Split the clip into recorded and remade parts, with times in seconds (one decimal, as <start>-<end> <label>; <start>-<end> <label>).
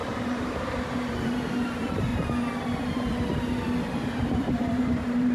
0.0-2.1 remade; 2.1-4.0 recorded; 4.0-5.3 remade